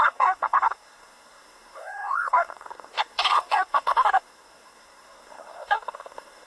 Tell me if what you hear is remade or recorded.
remade